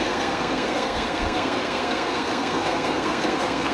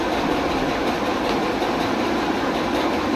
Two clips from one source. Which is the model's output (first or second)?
first